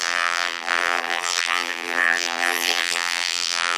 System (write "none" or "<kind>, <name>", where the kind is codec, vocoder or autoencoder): vocoder, BigVGAN v2